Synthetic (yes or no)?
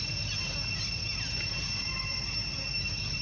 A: no